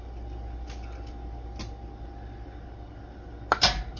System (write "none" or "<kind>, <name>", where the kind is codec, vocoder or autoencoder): none